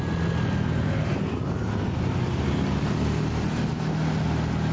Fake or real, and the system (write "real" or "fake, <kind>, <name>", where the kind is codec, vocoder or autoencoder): real